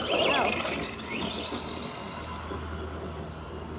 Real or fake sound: real